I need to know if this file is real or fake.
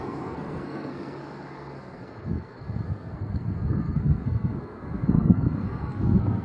fake